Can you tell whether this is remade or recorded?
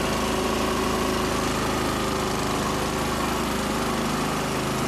recorded